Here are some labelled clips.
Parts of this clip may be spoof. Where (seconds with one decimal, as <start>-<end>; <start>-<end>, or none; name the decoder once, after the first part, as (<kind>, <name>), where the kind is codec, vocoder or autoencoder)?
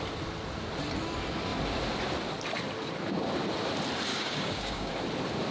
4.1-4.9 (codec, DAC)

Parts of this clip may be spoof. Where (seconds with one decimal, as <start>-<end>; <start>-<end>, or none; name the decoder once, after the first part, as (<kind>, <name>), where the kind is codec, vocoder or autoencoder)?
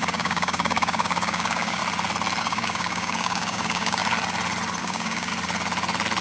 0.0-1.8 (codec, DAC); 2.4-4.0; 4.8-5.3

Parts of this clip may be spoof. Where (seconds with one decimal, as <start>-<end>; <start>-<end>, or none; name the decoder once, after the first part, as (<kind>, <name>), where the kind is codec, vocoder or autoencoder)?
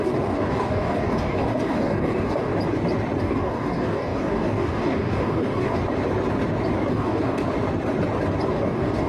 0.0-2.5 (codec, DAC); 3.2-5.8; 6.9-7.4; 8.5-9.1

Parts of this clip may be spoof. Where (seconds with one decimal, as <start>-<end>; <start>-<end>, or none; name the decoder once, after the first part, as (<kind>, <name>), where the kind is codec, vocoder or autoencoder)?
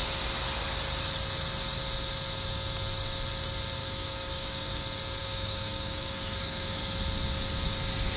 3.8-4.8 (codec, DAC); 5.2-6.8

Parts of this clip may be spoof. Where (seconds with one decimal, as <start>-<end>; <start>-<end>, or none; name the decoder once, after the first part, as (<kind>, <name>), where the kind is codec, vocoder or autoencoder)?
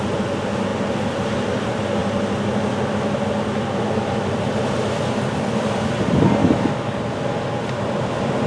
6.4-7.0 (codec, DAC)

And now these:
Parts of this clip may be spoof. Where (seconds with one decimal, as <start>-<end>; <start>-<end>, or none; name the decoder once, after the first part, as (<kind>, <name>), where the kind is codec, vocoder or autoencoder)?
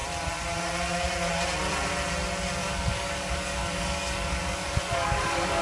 2.6-5.6 (codec, DAC)